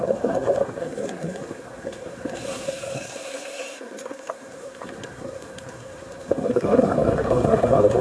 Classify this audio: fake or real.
fake